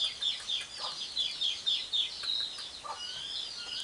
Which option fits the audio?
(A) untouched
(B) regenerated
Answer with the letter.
B